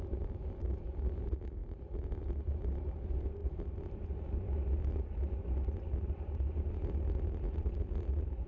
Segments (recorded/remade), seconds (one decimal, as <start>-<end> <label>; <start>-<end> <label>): 0.0-1.6 recorded; 1.6-2.7 remade; 2.7-8.5 recorded